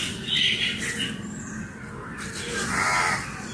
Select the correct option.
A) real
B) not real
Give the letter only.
A